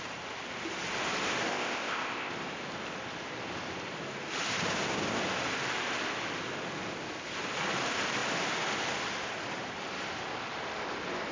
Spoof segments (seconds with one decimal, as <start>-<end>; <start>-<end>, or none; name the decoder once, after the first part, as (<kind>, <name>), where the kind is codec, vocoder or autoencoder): 1.5-2.3 (codec, ZipCodec)